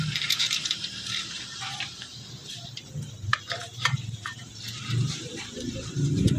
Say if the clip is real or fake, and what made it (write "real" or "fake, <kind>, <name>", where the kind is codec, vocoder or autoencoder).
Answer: fake, vocoder, BigVGAN v2